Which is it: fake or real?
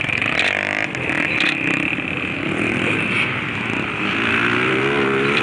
fake